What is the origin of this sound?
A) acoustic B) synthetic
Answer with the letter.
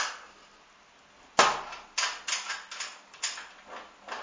A